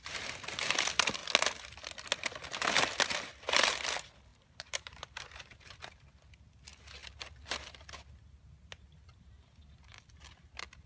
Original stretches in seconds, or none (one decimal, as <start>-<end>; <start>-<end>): 0.0-4.3; 5.8-10.9